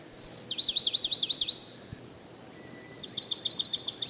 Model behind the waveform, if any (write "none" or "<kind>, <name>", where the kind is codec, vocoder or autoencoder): vocoder, BigVGAN v2